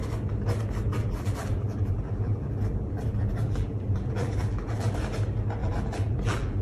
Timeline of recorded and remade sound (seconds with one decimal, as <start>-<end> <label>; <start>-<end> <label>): 0.0-0.9 recorded; 0.9-4.9 remade; 4.9-5.6 recorded; 5.6-6.6 remade